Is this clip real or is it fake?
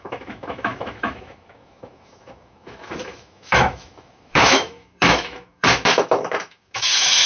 fake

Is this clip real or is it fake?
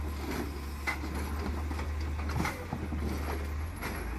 real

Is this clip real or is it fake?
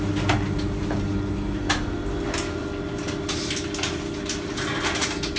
real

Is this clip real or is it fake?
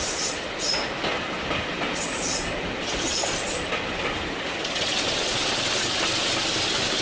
real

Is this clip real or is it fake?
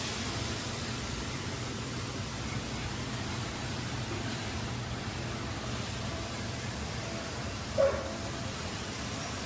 fake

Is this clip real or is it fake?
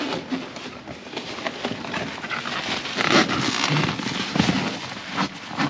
real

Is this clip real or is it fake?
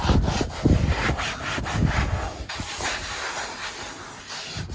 real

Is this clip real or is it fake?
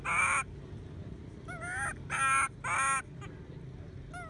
real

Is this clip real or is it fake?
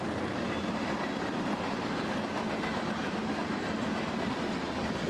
real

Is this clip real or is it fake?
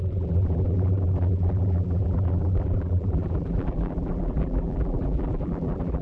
fake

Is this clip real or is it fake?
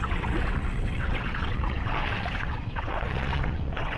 fake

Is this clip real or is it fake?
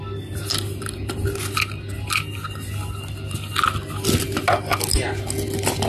real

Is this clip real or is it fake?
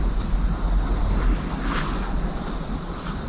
real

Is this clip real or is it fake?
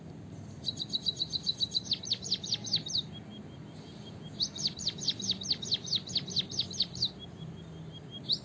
real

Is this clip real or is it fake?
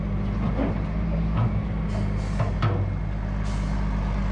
real